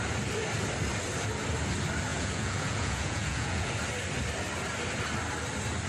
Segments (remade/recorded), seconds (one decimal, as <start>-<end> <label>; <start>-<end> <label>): 0.0-2.1 recorded; 2.1-3.7 remade; 3.7-5.9 recorded